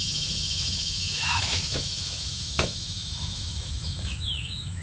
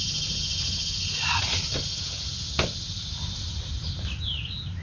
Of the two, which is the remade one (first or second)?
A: first